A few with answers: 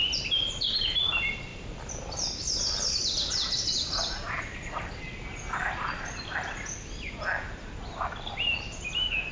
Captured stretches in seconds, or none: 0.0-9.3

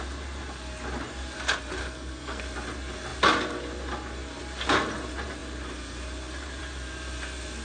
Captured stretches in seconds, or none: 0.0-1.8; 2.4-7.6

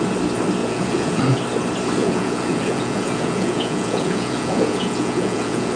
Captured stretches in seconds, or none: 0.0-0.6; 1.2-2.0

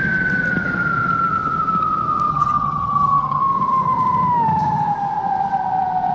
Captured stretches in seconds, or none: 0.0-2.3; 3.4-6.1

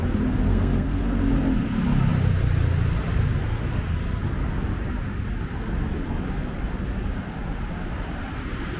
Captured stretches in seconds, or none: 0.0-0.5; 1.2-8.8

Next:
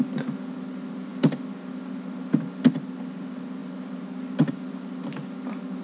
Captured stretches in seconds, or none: 0.0-5.8

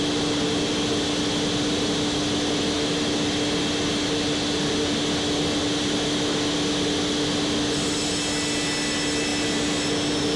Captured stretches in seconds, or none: 0.0-10.4